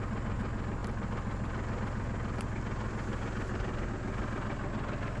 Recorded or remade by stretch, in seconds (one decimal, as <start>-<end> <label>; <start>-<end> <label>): 0.0-5.2 recorded